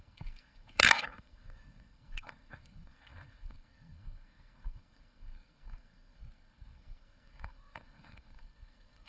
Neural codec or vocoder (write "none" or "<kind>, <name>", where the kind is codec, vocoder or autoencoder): codec, SNAC